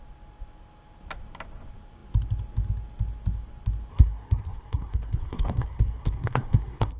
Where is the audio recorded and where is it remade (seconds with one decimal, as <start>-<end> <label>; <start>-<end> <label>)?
0.0-3.9 recorded; 3.9-7.0 remade